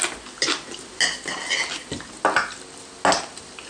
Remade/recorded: recorded